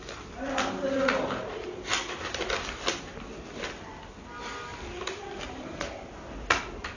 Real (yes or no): yes